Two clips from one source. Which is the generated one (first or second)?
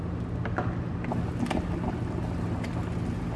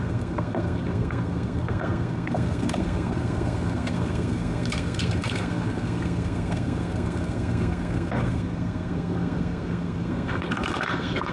second